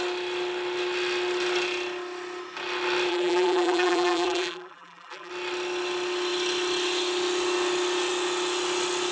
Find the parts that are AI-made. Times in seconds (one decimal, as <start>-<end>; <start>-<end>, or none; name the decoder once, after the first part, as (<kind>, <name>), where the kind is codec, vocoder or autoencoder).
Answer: 3.1-5.3 (vocoder, BigVGAN v2)